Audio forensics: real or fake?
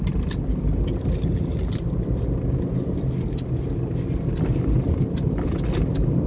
real